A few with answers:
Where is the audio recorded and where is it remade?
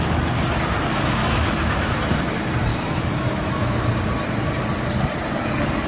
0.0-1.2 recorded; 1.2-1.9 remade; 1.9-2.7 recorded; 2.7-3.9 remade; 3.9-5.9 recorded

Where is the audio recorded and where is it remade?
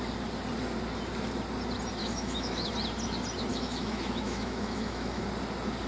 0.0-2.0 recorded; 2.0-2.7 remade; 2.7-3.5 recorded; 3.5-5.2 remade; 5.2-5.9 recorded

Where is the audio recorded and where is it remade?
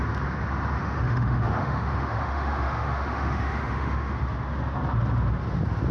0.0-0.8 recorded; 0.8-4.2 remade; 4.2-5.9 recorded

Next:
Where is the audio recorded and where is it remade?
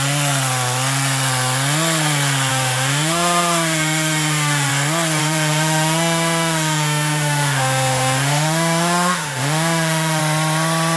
0.0-2.5 recorded; 2.5-4.7 remade; 4.7-5.2 recorded; 5.2-10.2 remade; 10.2-11.0 recorded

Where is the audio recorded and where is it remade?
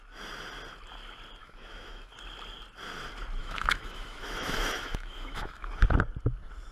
0.0-1.4 recorded; 1.4-2.1 remade; 2.1-3.4 recorded; 3.4-5.7 remade; 5.7-6.7 recorded